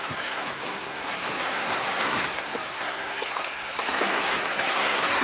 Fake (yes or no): yes